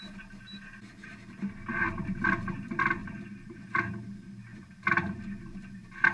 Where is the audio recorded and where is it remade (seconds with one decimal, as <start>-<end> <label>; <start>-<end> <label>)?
0.0-3.0 recorded; 3.0-3.6 remade; 3.6-6.1 recorded